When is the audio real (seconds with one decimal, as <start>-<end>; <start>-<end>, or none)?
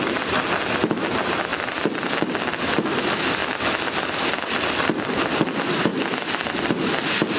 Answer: 0.0-7.4